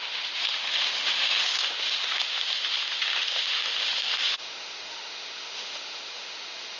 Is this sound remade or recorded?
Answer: remade